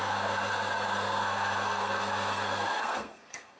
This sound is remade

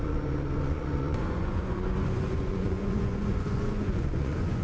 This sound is remade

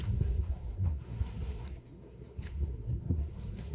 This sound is remade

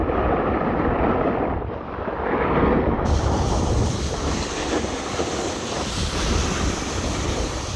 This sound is remade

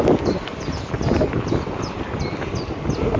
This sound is recorded